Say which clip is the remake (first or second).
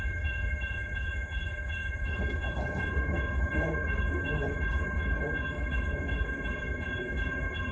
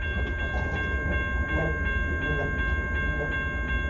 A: first